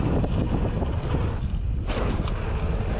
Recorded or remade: recorded